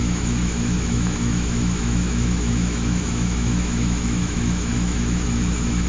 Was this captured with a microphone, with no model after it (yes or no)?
no